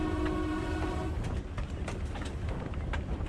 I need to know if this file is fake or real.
fake